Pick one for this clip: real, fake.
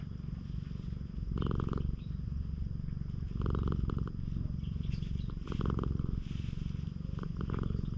real